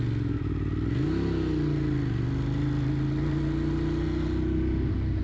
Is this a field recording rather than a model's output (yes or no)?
yes